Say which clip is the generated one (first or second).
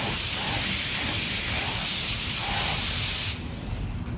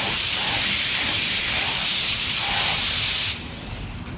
second